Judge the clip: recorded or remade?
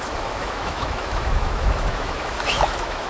remade